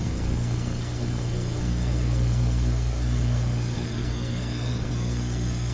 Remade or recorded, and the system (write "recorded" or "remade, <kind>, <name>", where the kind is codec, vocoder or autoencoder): remade, codec, SNAC